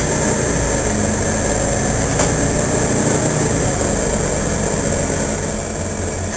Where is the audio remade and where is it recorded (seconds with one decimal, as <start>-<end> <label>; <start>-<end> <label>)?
0.0-6.4 recorded